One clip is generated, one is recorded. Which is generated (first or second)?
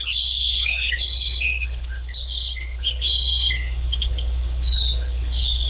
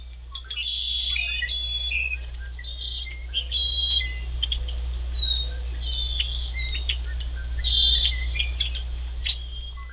first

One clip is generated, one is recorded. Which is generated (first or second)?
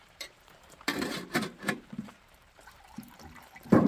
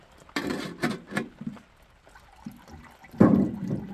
first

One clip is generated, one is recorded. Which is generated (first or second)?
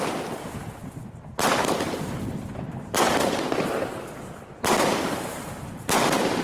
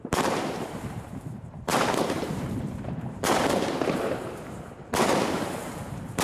second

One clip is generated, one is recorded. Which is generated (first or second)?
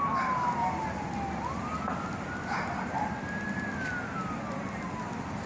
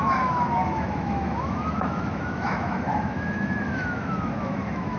second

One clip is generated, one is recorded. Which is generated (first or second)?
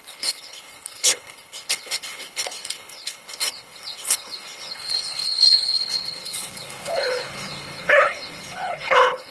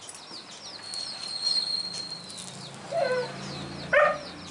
first